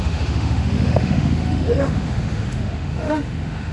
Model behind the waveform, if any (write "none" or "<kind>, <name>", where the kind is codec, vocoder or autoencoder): autoencoder, DAC-VAE